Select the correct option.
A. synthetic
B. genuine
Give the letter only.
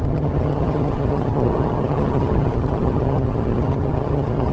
A